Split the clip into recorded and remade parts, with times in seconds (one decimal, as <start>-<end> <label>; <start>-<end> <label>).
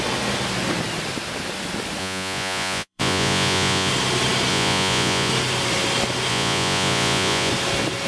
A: 0.0-2.0 recorded; 2.0-3.9 remade; 3.9-4.5 recorded; 4.5-5.3 remade; 5.3-6.3 recorded; 6.3-7.5 remade; 7.5-8.1 recorded